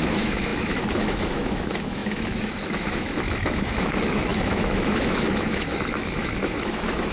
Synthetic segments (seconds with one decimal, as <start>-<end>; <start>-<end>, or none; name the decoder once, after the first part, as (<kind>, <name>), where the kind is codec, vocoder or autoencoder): 0.0-7.1 (autoencoder, DAC-VAE)

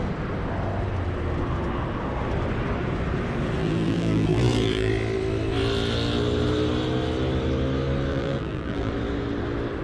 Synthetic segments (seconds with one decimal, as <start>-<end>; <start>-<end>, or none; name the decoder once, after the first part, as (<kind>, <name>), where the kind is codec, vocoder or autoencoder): 3.6-4.9 (vocoder, BigVGAN v2); 8.1-8.9